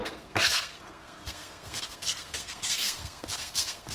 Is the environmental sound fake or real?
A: fake